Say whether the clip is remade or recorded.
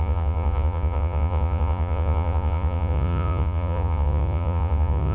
remade